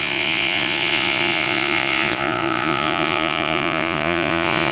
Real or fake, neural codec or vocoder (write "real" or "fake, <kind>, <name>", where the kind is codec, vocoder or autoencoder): fake, vocoder, Vocos